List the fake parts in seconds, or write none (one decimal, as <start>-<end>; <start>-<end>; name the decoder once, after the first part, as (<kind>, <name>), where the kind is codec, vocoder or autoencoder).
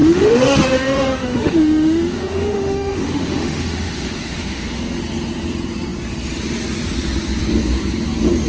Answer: 0.0-5.0 (autoencoder, DAC-VAE)